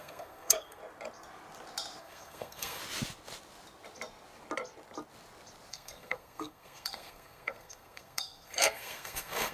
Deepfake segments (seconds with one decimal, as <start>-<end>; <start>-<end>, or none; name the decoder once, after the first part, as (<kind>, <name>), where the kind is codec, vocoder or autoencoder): 0.0-0.8 (codec, SNAC); 2.0-2.8; 5.7-9.5